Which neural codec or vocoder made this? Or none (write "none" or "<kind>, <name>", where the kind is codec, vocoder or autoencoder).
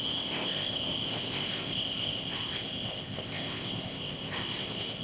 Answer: codec, ZipCodec